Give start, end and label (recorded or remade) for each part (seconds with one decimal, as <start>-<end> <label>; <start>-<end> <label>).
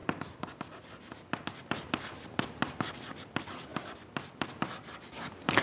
0.0-5.6 recorded